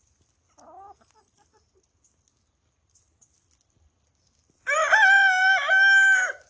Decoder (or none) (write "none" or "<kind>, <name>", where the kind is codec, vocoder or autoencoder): none